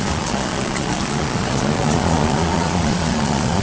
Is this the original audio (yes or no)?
no